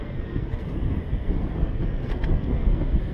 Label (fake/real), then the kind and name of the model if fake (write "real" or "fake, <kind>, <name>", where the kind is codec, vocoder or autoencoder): fake, codec, SNAC